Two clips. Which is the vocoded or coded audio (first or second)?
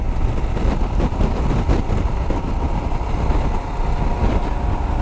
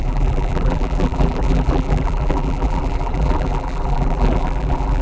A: second